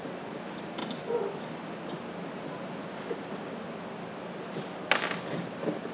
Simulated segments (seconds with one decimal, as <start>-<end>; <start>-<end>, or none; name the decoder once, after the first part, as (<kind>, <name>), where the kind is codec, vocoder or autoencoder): none